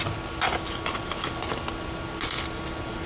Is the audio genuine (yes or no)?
yes